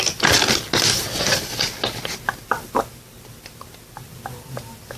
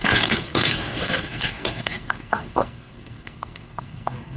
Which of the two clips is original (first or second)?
first